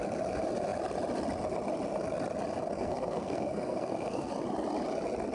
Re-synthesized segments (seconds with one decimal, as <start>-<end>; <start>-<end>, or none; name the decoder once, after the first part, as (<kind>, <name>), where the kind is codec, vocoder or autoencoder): 2.7-4.3 (codec, SNAC)